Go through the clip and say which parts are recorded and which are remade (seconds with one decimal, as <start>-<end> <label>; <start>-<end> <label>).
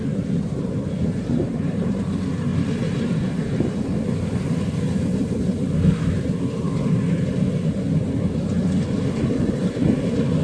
0.0-2.5 remade; 2.5-4.0 recorded; 4.0-10.4 remade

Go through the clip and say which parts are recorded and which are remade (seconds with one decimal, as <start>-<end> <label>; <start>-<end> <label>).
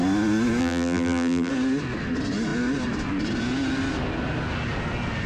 0.0-0.6 recorded; 0.6-1.5 remade; 1.5-5.3 recorded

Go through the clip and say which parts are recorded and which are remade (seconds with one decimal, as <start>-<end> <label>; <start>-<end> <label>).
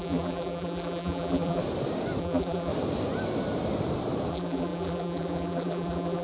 0.0-1.6 remade; 1.6-2.2 recorded; 2.2-2.7 remade; 2.7-4.3 recorded; 4.3-6.2 remade